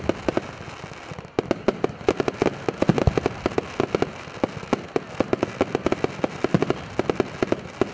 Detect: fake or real real